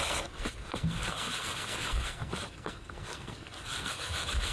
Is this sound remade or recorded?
remade